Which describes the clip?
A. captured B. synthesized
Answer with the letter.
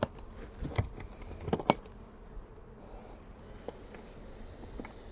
A